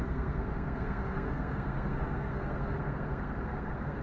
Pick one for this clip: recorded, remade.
remade